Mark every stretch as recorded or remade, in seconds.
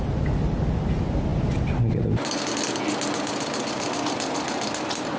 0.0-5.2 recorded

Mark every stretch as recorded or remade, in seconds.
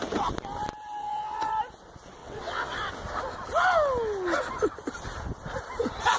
0.0-1.0 recorded; 1.0-1.5 remade; 1.5-2.2 recorded; 2.2-2.9 remade; 2.9-6.2 recorded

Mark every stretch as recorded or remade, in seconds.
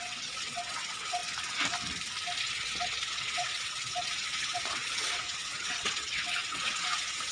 0.0-1.2 remade; 1.2-2.4 recorded; 2.4-7.3 remade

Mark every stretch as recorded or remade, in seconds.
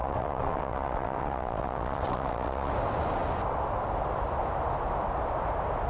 0.0-2.7 remade; 2.7-5.9 recorded